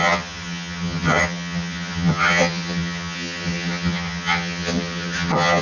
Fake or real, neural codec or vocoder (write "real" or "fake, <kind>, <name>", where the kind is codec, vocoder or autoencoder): fake, vocoder, HiFi-GAN